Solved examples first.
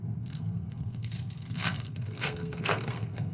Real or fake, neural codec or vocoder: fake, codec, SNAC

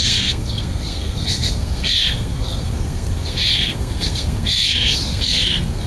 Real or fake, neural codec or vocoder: fake, codec, SNAC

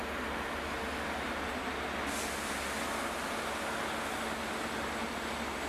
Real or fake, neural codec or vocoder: real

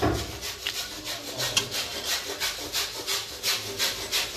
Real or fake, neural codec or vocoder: real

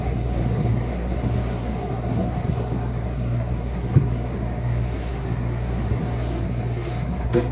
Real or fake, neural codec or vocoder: fake, codec, SNAC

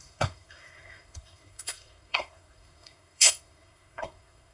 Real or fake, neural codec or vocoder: fake, codec, SNAC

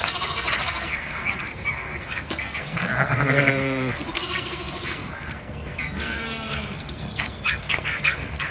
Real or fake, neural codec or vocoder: fake, codec, SNAC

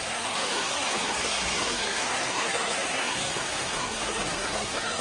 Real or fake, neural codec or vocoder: fake, codec, SNAC